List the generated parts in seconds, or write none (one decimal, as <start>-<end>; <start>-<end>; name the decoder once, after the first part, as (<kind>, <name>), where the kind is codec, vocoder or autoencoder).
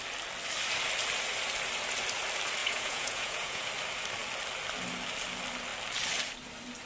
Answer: 2.6-3.7 (vocoder, Vocos)